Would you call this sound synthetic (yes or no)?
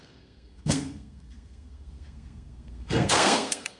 yes